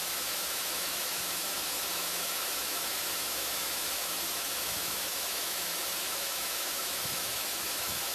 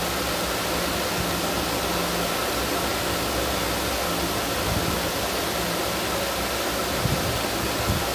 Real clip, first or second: second